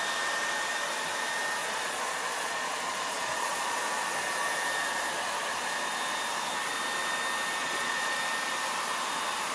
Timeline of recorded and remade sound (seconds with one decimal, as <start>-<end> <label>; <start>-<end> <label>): 0.0-1.6 recorded; 1.6-3.8 remade; 3.8-7.6 recorded; 7.6-8.2 remade; 8.2-9.5 recorded